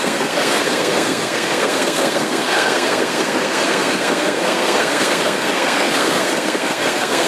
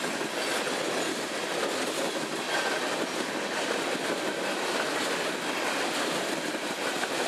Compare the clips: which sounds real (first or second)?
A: second